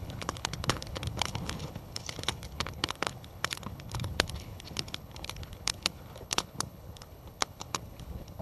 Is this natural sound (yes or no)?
no